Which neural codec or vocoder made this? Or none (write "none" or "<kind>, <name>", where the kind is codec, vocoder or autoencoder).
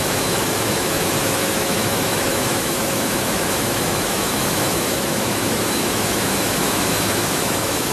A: autoencoder, DAC-VAE